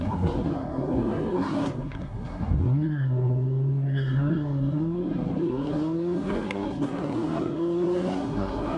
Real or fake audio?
fake